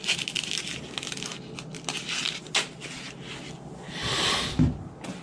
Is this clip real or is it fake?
real